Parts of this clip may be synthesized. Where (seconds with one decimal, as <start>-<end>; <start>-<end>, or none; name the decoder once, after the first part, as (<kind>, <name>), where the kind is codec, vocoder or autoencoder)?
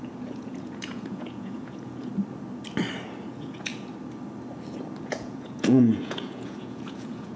0.0-2.1 (vocoder, Vocos); 3.3-3.7; 5.0-7.4